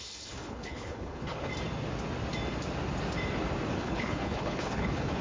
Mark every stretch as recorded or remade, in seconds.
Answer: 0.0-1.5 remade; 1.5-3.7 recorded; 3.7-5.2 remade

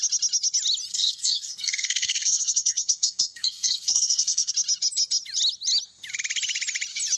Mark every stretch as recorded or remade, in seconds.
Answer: 0.0-0.9 recorded; 0.9-4.5 remade; 4.5-7.2 recorded

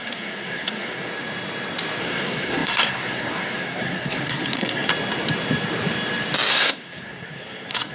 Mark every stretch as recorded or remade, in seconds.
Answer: 0.0-1.1 remade; 1.1-2.0 recorded; 2.0-4.9 remade; 4.9-6.5 recorded; 6.5-7.9 remade